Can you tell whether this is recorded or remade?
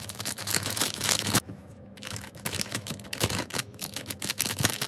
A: remade